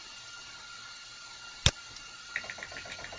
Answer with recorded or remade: recorded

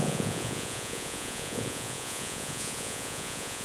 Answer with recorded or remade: remade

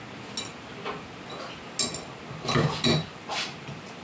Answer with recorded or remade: recorded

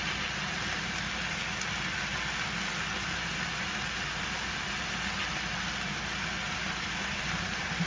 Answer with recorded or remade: recorded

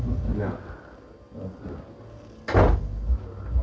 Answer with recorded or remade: recorded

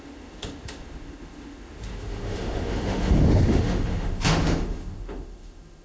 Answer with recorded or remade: remade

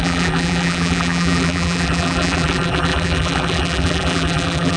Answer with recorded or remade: remade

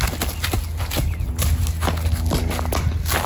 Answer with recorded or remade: recorded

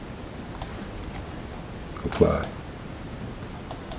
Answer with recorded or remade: recorded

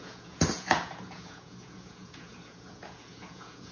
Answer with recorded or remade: remade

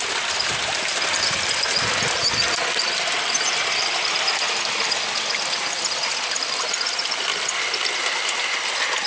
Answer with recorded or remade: recorded